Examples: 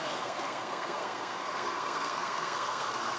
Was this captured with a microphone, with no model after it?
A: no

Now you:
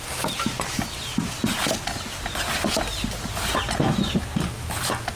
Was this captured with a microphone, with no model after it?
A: yes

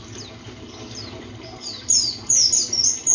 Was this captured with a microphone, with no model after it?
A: yes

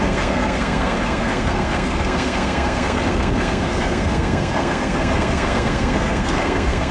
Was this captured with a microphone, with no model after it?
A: no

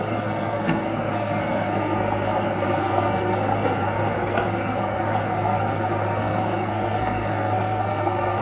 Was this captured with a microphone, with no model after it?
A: no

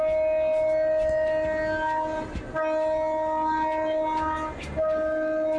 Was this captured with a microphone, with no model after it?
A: yes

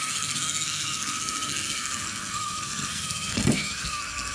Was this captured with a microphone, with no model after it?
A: no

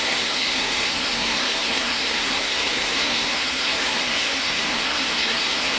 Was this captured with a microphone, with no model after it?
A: no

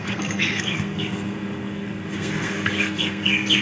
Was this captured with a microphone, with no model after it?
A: no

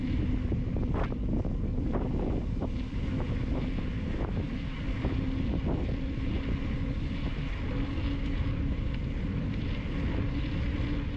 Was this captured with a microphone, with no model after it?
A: yes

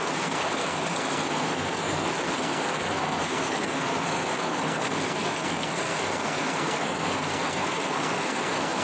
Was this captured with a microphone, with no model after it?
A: no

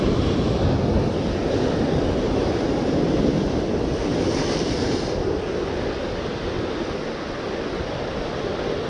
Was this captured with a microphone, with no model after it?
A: yes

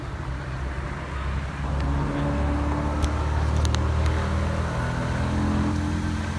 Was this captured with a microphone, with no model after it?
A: yes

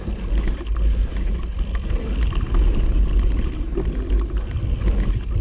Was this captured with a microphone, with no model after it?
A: yes